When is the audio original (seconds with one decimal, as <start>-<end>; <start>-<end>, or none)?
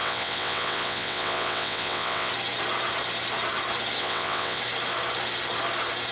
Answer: 2.3-4.0; 4.6-6.1